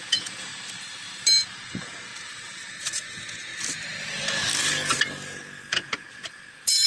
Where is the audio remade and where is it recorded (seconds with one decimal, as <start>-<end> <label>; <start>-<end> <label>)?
0.0-0.5 remade; 0.5-1.5 recorded; 1.5-2.1 remade; 2.1-2.7 recorded; 2.7-3.5 remade; 3.5-5.7 recorded; 5.7-6.9 remade